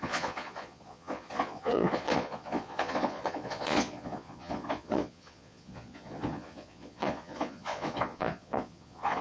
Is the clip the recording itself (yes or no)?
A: no